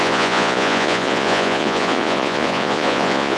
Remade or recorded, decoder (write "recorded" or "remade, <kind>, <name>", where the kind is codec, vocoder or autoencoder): remade, vocoder, Vocos